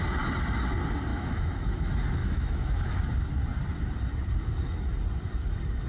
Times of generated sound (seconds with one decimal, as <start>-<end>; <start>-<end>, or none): 1.1-1.8; 2.2-3.0